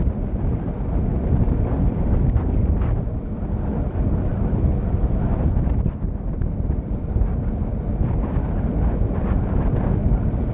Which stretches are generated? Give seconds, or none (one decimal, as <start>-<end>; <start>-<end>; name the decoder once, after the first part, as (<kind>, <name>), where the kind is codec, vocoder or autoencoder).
none